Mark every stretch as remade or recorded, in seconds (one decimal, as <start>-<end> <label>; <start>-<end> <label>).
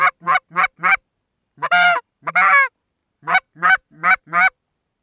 0.0-1.4 recorded; 1.4-2.2 remade; 2.2-3.0 recorded; 3.0-4.2 remade; 4.2-5.0 recorded